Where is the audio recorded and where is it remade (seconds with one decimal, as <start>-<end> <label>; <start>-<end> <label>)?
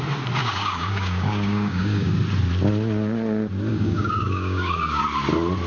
0.0-0.4 recorded; 0.4-2.1 remade; 2.1-3.7 recorded; 3.7-5.0 remade; 5.0-5.7 recorded